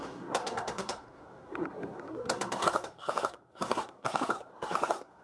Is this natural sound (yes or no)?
no